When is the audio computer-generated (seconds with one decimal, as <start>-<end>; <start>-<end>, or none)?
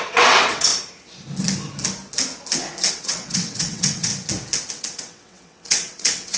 0.0-0.7; 2.9-4.1; 4.7-6.4